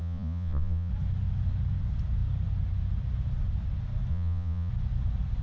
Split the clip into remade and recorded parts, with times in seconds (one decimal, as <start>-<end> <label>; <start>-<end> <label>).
0.0-0.9 remade; 0.9-4.1 recorded; 4.1-4.7 remade; 4.7-5.4 recorded